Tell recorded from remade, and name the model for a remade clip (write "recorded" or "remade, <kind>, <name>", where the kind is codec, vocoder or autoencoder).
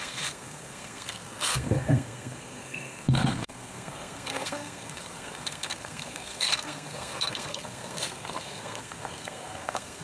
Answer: remade, codec, SNAC